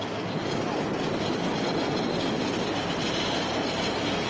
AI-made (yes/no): no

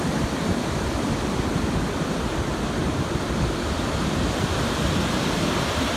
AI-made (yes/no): no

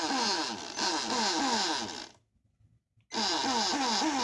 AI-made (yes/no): no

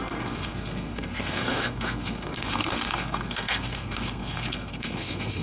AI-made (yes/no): yes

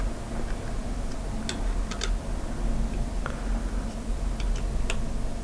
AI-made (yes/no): no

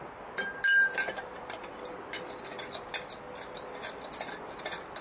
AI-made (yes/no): no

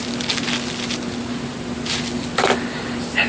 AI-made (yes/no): no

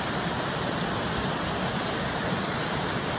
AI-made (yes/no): no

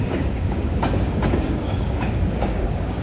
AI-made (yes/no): yes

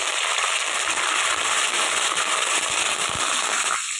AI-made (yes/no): no